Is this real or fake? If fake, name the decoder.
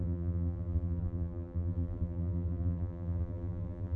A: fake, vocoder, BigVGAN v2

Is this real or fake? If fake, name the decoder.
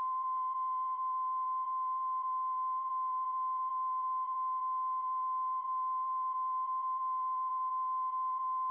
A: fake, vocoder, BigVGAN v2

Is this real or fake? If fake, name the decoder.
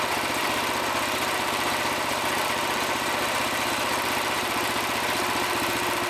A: fake, vocoder, BigVGAN v2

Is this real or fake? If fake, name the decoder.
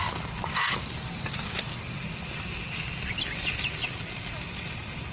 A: real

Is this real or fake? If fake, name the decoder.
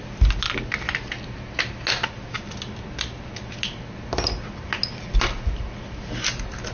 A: real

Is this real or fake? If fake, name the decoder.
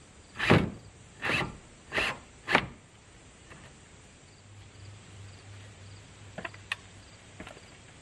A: fake, vocoder, BigVGAN v2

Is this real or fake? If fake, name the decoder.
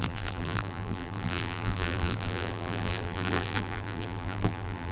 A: fake, vocoder, BigVGAN v2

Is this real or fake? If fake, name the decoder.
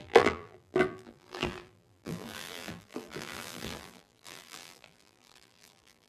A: fake, vocoder, BigVGAN v2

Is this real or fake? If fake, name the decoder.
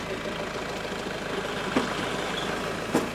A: real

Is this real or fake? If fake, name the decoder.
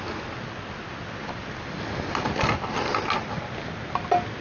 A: real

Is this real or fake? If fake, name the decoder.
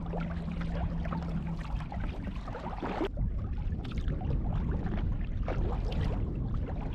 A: real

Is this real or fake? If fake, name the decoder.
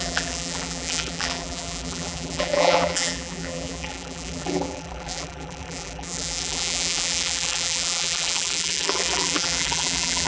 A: fake, vocoder, BigVGAN v2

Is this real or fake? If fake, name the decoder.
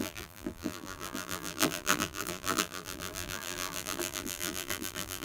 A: fake, vocoder, BigVGAN v2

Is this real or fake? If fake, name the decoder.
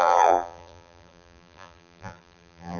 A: fake, vocoder, BigVGAN v2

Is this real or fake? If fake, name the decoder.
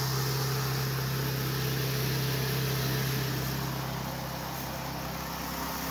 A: real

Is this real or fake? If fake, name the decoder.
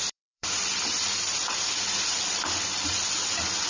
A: fake, vocoder, BigVGAN v2